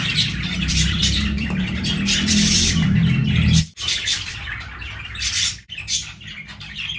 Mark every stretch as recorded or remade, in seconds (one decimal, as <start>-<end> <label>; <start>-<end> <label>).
0.0-6.0 remade; 6.0-7.0 recorded